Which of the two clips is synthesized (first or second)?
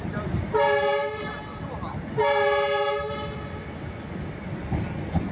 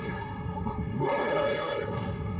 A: second